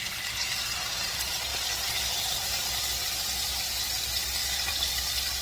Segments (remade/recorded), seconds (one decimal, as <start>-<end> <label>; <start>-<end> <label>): 0.0-1.5 recorded; 1.5-2.7 remade; 2.7-4.4 recorded; 4.4-4.9 remade; 4.9-5.4 recorded